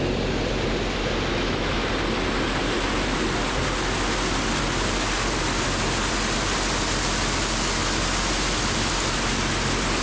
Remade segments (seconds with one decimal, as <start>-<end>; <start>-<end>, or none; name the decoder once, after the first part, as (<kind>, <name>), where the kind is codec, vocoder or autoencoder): 1.3-1.9 (autoencoder, DAC-VAE)